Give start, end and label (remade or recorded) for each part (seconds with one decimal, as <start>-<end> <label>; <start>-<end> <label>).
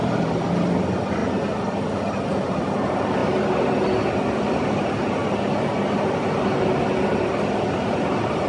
0.0-8.5 recorded